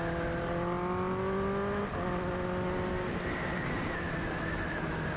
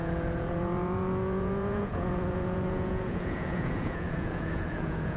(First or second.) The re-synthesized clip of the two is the second